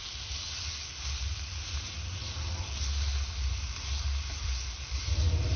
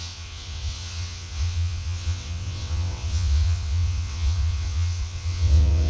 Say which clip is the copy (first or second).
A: second